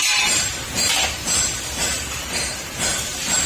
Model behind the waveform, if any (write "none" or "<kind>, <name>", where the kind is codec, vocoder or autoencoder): vocoder, BigVGAN v2